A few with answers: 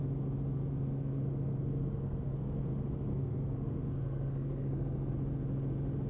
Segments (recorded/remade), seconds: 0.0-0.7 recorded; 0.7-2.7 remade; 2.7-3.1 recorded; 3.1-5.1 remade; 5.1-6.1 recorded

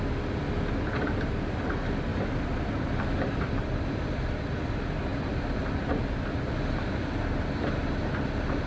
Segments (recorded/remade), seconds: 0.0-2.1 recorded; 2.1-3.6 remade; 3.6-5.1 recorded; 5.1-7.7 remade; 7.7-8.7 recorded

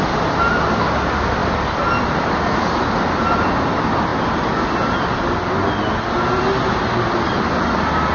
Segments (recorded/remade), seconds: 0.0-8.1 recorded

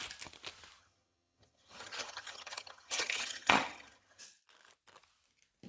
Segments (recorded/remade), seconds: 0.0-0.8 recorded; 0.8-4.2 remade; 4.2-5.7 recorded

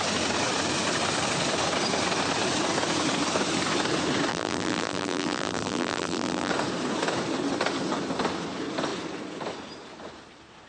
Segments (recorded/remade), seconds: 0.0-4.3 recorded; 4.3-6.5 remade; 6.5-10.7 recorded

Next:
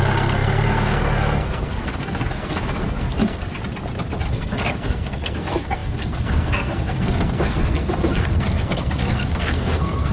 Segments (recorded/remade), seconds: 0.0-3.5 remade; 3.5-4.3 recorded; 4.3-10.1 remade

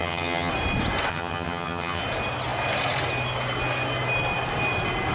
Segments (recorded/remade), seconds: 0.0-0.5 remade; 0.5-1.1 recorded; 1.1-2.0 remade; 2.0-5.1 recorded